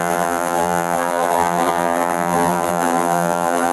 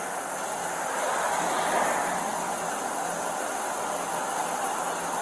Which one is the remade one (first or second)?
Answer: first